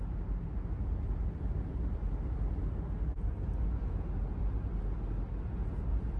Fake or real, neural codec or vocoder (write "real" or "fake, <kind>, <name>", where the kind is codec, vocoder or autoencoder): real